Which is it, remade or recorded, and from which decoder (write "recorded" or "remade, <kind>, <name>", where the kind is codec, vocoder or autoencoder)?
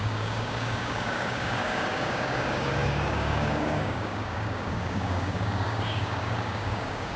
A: remade, codec, DAC